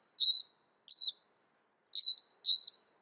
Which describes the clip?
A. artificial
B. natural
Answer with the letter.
B